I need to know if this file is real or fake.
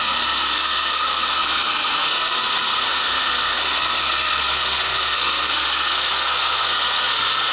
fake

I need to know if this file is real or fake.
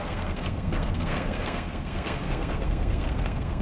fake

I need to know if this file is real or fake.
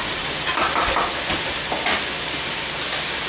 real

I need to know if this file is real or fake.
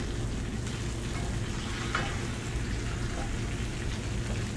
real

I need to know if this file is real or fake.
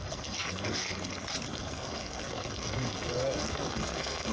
fake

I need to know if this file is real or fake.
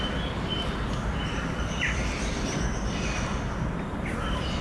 real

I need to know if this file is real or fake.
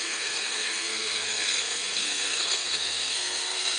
fake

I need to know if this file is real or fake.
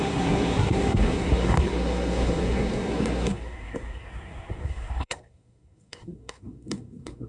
fake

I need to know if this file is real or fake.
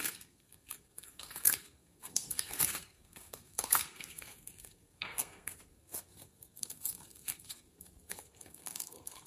fake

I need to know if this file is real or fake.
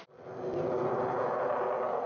real